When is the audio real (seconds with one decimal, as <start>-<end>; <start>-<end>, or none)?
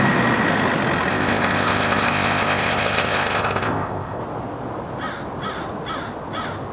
0.0-1.1; 4.2-6.7